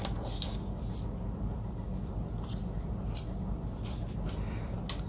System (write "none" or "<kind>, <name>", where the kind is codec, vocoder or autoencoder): none